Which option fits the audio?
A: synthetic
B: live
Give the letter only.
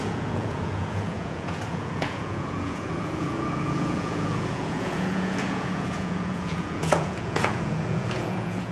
A